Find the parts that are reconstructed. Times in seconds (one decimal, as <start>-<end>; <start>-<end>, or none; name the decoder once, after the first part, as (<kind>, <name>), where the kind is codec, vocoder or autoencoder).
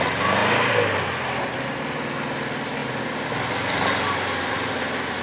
2.8-4.7 (vocoder, BigVGAN v2)